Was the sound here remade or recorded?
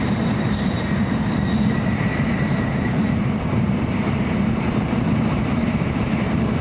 remade